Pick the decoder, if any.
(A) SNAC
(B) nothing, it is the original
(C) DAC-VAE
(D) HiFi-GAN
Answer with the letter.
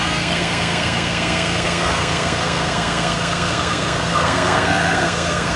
A